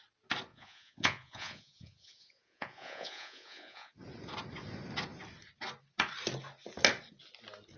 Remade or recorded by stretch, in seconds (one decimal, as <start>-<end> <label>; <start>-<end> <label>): 0.0-0.5 recorded; 0.5-3.9 remade; 3.9-7.8 recorded